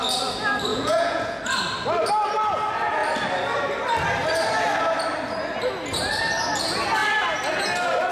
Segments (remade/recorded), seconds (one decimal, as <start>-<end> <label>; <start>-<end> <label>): 0.0-0.7 recorded; 0.7-1.4 remade; 1.4-8.1 recorded